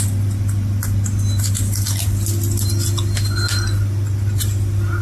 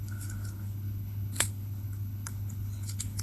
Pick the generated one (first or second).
second